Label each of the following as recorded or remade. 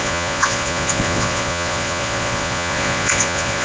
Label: remade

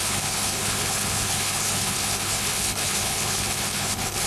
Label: remade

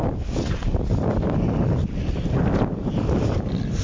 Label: recorded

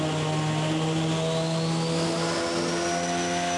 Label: recorded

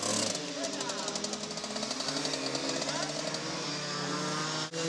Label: recorded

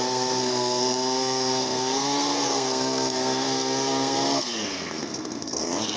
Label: remade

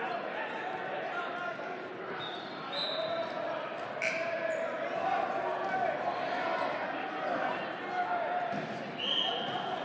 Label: recorded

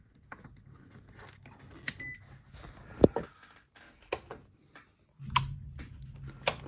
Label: recorded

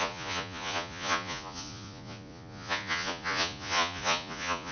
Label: remade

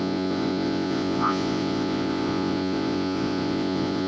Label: remade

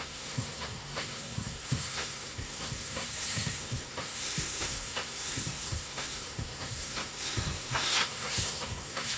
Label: remade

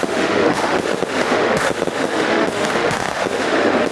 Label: remade